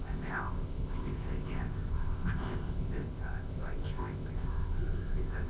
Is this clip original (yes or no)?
no